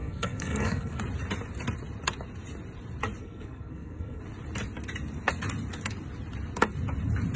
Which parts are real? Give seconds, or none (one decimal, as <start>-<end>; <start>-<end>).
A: 1.0-3.2; 4.2-7.4